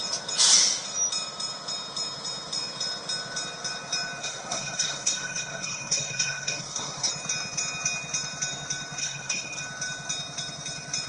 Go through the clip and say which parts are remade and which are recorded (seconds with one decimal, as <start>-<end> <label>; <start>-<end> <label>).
0.0-4.2 recorded; 4.2-7.1 remade; 7.1-9.0 recorded; 9.0-9.6 remade; 9.6-11.1 recorded